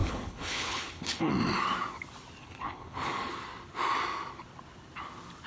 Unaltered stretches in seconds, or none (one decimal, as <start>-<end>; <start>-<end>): 1.3-2.4; 3.3-5.5